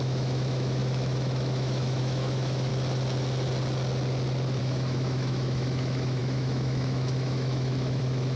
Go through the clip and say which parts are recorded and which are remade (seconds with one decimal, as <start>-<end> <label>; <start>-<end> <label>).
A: 0.0-2.7 remade; 2.7-4.6 recorded; 4.6-8.4 remade